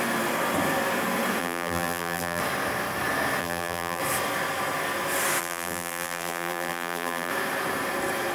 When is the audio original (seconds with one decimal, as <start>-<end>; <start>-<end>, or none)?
0.0-1.4; 2.4-3.4; 4.0-5.4; 7.3-8.3